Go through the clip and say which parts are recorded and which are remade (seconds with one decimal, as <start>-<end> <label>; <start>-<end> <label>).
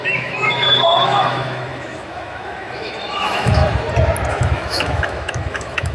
0.0-3.6 remade; 3.6-4.3 recorded; 4.3-5.9 remade